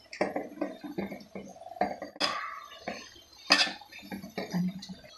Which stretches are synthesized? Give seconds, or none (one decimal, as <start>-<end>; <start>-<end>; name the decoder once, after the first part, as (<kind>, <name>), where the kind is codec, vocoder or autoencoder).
none